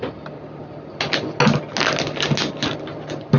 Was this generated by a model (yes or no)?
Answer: no